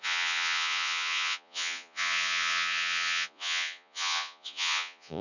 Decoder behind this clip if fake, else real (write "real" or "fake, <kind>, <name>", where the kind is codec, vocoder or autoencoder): fake, vocoder, Vocos